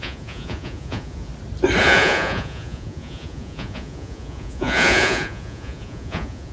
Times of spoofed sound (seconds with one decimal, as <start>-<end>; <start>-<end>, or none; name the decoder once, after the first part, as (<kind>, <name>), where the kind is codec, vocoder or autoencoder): 0.0-1.3 (vocoder, Vocos); 1.8-6.5